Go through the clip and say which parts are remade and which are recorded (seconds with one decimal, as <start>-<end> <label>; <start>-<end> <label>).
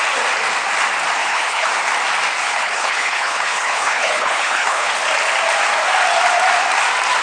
0.0-1.2 recorded; 1.2-1.7 remade; 1.7-2.4 recorded; 2.4-4.9 remade; 4.9-7.2 recorded